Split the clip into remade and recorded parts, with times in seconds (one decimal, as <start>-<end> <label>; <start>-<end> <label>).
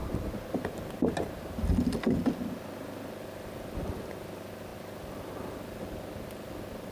0.0-6.9 recorded